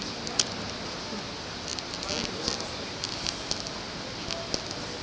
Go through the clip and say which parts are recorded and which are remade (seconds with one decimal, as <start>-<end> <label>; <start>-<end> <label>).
0.0-5.0 recorded